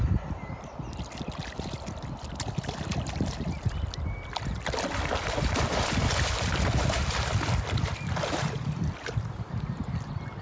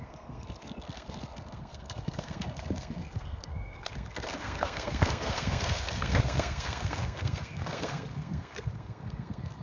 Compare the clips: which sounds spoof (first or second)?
second